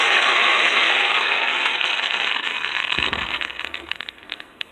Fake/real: fake